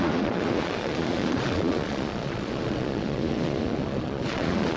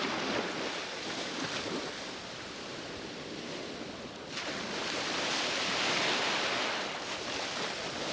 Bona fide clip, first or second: second